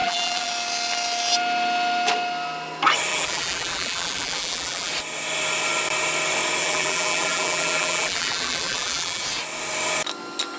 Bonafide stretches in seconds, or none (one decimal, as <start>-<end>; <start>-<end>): 0.5-3.1; 4.9-6.6; 9.2-10.6